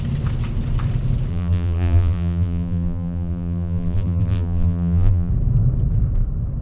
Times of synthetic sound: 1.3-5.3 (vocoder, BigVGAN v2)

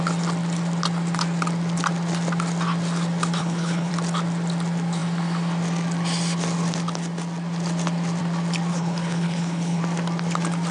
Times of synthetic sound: 3.4-3.9 (codec, HILCodec); 8.7-9.8

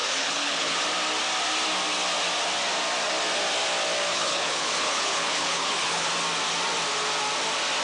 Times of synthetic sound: 0.0-0.8 (codec, HILCodec); 4.1-6.1

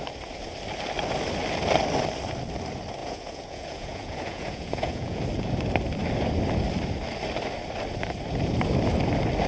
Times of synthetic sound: 3.0-5.2 (vocoder, Vocos)

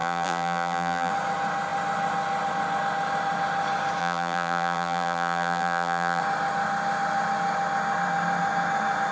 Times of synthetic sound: 0.0-1.1 (vocoder, BigVGAN v2); 4.0-6.2

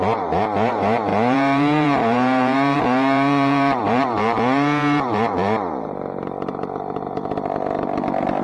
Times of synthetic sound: 0.0-8.4 (vocoder, BigVGAN v2)